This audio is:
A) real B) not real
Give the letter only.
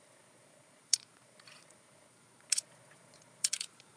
B